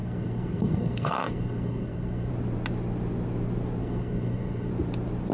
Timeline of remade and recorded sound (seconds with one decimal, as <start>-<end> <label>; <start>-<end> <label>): 0.0-2.3 remade; 2.3-3.8 recorded; 3.8-4.7 remade; 4.7-5.3 recorded

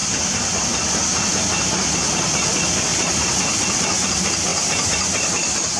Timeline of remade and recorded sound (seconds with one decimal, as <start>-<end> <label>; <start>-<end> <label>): 0.0-2.9 recorded; 2.9-3.4 remade; 3.4-4.5 recorded; 4.5-5.3 remade; 5.3-5.8 recorded